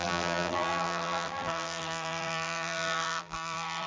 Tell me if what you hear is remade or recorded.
remade